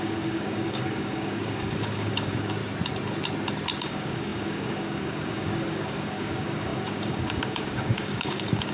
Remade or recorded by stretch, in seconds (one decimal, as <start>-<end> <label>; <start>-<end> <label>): 0.0-2.6 remade; 2.6-3.8 recorded; 3.8-8.7 remade